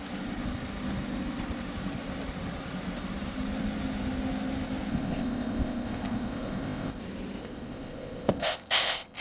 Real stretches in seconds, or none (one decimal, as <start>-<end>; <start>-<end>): 0.0-4.9; 7.0-7.4

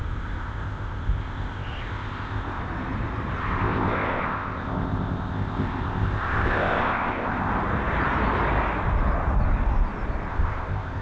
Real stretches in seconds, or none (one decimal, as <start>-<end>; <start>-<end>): 2.6-3.4; 7.5-10.3

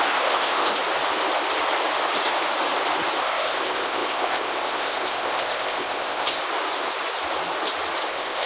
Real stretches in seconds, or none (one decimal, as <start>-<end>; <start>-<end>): 0.7-3.2; 6.4-8.1

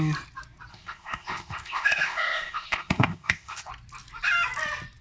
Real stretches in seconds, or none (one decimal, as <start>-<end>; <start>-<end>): 0.0-0.7; 3.7-5.0

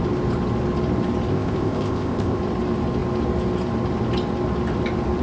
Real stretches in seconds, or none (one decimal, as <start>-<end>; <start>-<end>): 0.0-1.3; 2.4-5.2

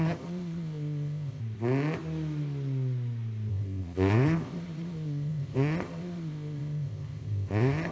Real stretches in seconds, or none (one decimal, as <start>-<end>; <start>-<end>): 1.4-3.5